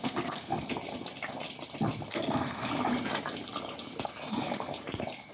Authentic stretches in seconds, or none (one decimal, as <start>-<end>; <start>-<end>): 0.5-2.1; 2.7-5.3